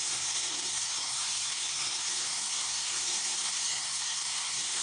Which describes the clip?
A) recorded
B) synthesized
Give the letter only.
B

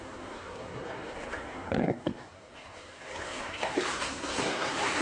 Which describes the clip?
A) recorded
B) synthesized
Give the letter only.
B